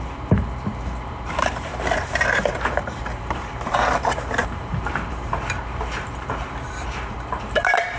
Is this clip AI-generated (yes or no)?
yes